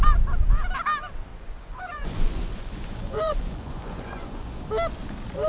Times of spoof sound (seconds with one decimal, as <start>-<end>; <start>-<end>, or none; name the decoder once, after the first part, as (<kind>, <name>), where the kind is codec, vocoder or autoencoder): 1.3-4.6 (vocoder, Vocos)